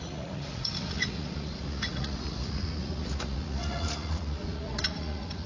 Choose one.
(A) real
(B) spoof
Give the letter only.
B